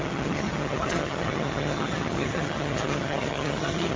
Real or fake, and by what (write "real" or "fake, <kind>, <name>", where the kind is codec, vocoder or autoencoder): fake, vocoder, HiFi-GAN